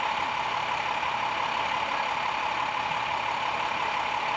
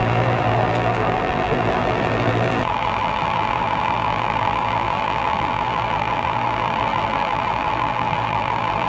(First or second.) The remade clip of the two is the second